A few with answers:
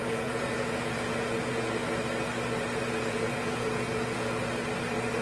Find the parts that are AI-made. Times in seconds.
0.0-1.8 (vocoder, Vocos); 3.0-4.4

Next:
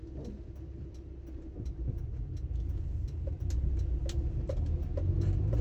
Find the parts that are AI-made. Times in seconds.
none

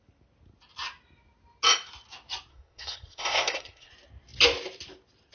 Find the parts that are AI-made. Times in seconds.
2.5-3.9 (codec, SNAC)

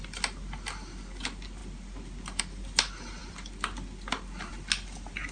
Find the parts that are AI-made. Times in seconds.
none

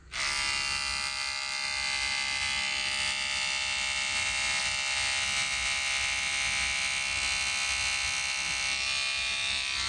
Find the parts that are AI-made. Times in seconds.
none

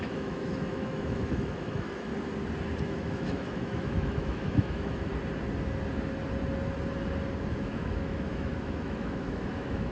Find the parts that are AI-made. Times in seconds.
0.0-2.1 (autoencoder, DAC-VAE); 2.8-5.1; 7.5-9.9